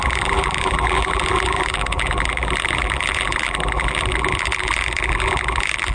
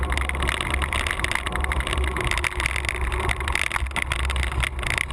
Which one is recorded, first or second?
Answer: second